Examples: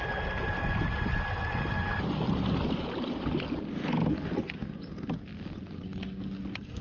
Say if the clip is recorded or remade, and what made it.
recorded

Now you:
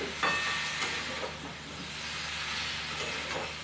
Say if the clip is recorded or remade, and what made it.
recorded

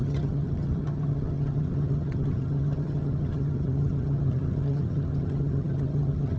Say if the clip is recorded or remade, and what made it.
remade, vocoder, HiFi-GAN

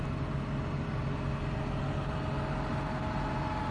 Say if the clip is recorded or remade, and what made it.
recorded